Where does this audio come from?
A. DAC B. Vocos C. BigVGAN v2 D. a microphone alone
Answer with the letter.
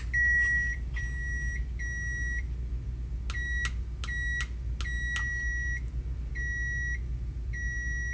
D